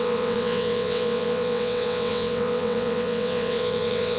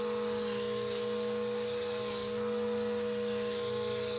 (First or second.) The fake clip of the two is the first